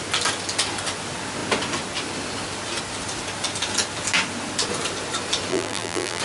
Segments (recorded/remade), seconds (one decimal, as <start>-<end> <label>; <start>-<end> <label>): 0.0-5.5 recorded; 5.5-6.2 remade